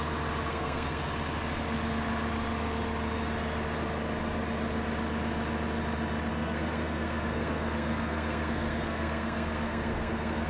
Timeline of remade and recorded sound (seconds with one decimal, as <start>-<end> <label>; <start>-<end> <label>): 0.0-0.5 recorded; 0.5-1.1 remade; 1.1-6.3 recorded; 6.3-10.5 remade